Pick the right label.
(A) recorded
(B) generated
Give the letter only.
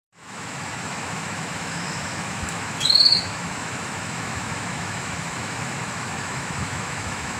B